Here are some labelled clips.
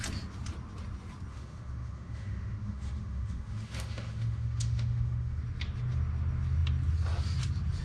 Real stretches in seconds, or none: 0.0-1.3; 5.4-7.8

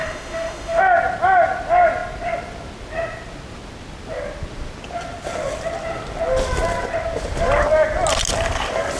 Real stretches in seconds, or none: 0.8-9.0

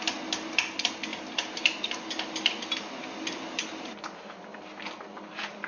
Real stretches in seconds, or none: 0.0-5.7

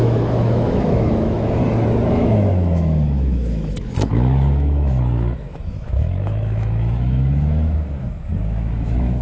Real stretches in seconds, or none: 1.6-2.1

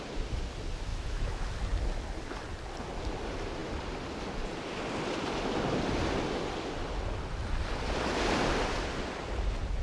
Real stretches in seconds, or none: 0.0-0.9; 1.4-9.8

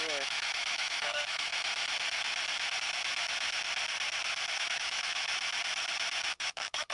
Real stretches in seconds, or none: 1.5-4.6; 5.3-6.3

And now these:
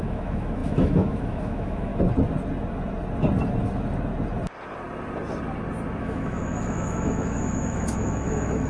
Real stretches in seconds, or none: 1.9-6.0